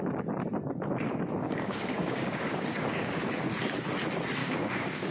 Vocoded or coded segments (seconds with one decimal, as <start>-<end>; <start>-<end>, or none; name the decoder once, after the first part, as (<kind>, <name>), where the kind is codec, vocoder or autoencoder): 1.4-3.3 (codec, DAC); 4.4-5.1